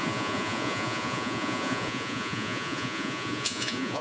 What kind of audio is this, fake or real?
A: fake